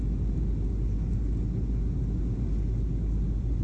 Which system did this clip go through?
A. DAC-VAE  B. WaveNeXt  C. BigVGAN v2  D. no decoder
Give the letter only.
D